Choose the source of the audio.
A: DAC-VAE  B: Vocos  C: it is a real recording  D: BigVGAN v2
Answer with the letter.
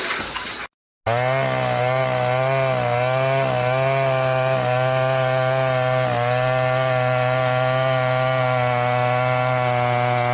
C